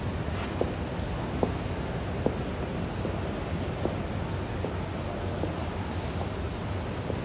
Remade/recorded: recorded